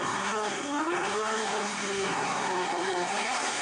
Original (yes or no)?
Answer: no